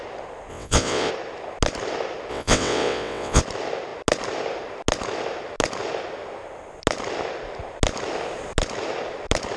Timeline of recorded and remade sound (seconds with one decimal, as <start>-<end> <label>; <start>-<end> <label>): 0.0-0.5 recorded; 0.5-1.1 remade; 1.1-2.3 recorded; 2.3-3.4 remade; 3.4-9.6 recorded